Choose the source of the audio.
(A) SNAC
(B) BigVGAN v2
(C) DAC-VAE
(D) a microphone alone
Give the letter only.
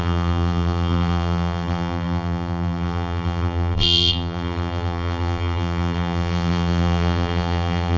B